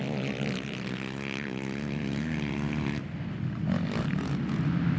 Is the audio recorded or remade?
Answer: recorded